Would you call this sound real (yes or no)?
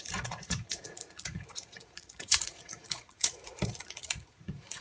no